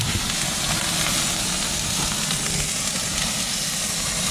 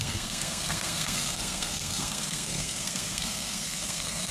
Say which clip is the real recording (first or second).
first